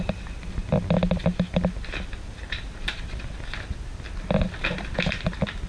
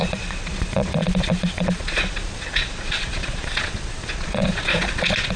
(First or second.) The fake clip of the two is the second